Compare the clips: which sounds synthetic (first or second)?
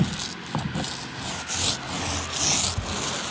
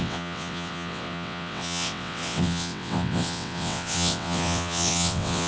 second